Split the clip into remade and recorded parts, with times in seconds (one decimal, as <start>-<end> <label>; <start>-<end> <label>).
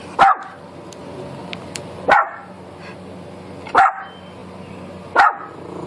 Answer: 0.0-5.9 recorded